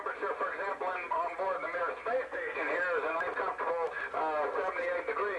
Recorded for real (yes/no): yes